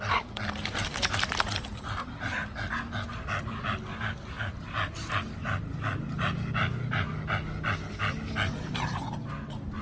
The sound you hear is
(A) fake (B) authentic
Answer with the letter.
B